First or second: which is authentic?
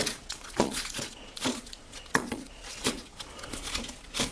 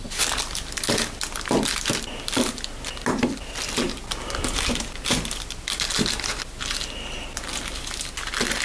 second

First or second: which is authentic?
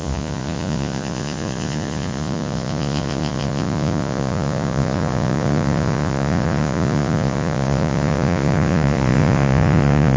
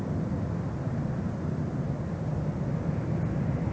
second